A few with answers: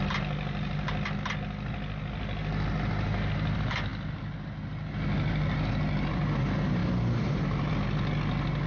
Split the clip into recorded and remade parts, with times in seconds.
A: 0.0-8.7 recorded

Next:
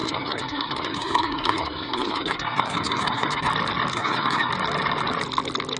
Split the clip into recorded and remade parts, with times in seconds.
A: 0.0-3.5 remade; 3.5-3.9 recorded; 3.9-4.5 remade; 4.5-5.8 recorded

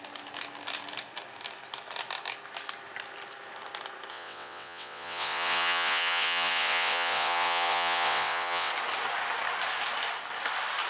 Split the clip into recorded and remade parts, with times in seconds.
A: 0.0-4.1 recorded; 4.1-8.7 remade; 8.7-10.9 recorded